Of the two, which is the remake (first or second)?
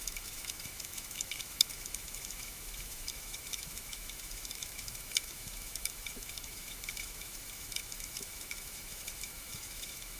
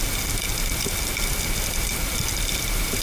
first